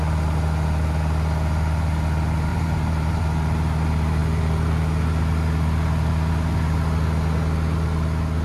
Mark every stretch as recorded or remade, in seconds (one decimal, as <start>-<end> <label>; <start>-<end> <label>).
0.0-2.5 recorded; 2.5-3.2 remade; 3.2-8.4 recorded